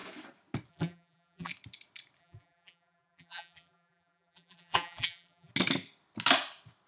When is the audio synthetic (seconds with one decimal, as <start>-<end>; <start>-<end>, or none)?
0.7-1.5; 2.2-5.5